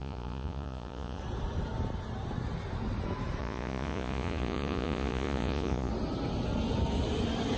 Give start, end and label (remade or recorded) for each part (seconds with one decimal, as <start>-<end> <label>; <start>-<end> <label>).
0.0-1.2 remade; 1.2-3.4 recorded; 3.4-5.9 remade; 5.9-7.6 recorded

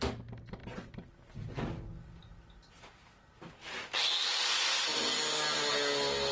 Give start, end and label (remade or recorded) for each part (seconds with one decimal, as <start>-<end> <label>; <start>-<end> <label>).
0.0-6.3 recorded

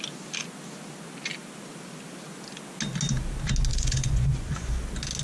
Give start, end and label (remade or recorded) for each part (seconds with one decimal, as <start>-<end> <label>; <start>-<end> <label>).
0.0-3.7 recorded; 3.7-4.7 remade; 4.7-5.2 recorded